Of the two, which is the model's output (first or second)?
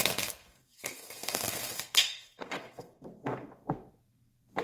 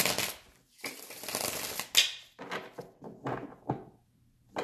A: first